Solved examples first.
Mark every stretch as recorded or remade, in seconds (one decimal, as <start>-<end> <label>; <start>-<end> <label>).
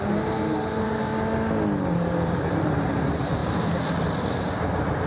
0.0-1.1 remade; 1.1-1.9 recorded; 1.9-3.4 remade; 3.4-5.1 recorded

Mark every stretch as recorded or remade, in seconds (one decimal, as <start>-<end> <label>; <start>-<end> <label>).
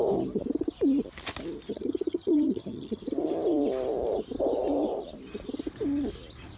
0.0-1.7 recorded; 1.7-3.0 remade; 3.0-6.6 recorded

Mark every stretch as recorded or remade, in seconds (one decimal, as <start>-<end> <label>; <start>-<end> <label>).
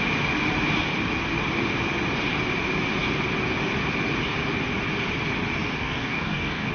0.0-5.8 recorded; 5.8-6.7 remade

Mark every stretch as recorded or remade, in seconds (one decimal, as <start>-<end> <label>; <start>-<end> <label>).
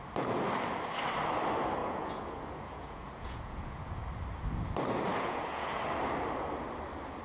0.0-1.8 recorded; 1.8-3.9 remade; 3.9-5.1 recorded; 5.1-5.8 remade; 5.8-7.2 recorded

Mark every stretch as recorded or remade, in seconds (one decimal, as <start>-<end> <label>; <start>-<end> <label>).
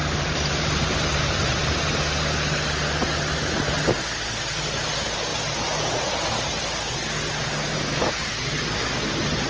0.0-2.0 remade; 2.0-5.3 recorded; 5.3-6.1 remade; 6.1-9.5 recorded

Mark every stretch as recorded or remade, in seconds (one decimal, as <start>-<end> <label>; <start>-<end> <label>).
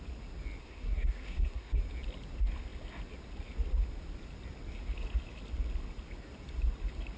0.0-0.6 recorded; 0.6-1.8 remade; 1.8-7.2 recorded